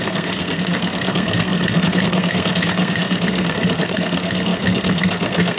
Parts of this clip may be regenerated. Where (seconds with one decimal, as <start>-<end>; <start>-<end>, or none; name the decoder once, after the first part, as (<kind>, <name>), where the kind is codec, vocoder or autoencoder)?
0.0-5.6 (codec, SNAC)